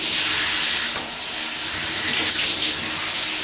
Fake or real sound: real